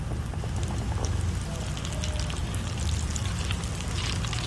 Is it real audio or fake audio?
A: real